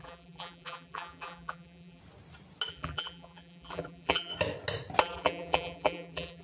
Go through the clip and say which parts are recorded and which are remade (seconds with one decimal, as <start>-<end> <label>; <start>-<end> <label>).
0.0-2.0 remade; 2.0-2.7 recorded; 2.7-4.3 remade; 4.3-5.0 recorded; 5.0-6.4 remade